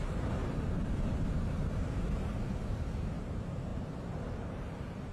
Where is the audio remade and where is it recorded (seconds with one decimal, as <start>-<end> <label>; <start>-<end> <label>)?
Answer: 0.0-5.1 remade